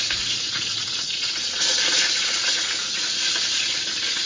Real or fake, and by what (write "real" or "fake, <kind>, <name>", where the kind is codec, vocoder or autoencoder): fake, vocoder, Vocos